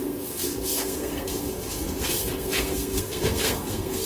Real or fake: fake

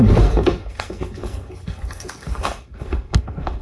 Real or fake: fake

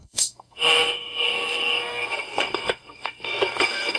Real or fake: fake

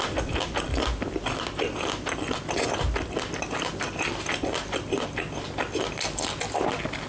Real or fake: real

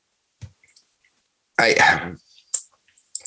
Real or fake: real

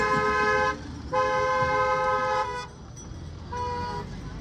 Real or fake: real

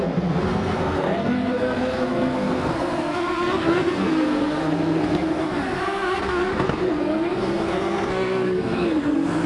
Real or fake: fake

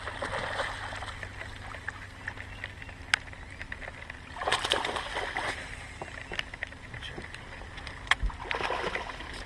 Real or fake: real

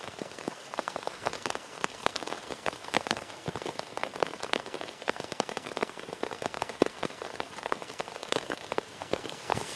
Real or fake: fake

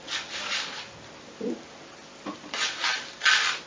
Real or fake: real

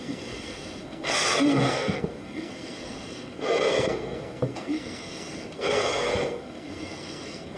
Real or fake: fake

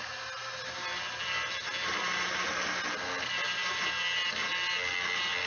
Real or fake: real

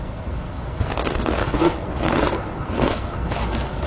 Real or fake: fake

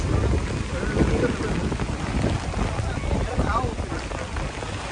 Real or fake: real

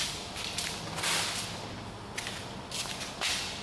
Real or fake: real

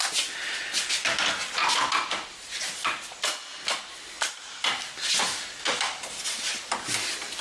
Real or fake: real